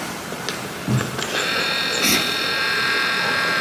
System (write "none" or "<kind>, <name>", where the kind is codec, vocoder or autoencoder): none